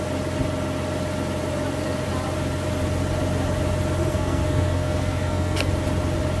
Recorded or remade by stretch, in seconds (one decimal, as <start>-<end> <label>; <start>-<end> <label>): 0.0-4.0 recorded; 4.0-5.7 remade; 5.7-6.4 recorded